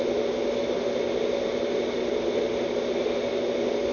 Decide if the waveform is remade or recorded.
recorded